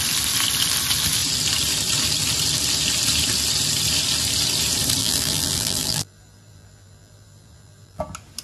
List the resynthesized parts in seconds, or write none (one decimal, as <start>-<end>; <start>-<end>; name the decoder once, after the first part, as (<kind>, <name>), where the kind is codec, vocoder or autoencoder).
5.0-8.0 (vocoder, BigVGAN v2)